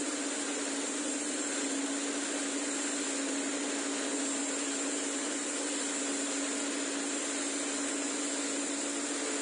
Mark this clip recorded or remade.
recorded